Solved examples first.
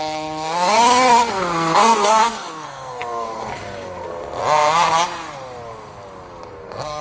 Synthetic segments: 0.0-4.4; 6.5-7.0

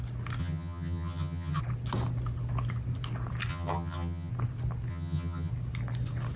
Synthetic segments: 0.4-1.6; 3.5-4.3; 4.9-5.5

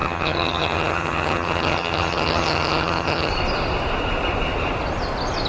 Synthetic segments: 0.0-3.3

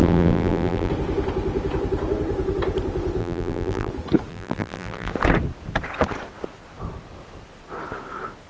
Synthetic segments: 0.0-0.9; 3.2-3.9; 4.3-5.1

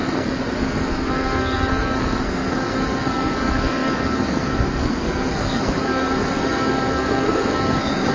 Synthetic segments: 0.0-8.1

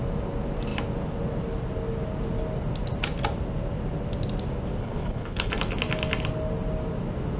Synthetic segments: 4.8-5.5

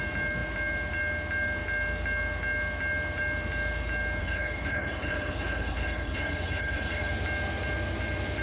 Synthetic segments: 4.2-7.1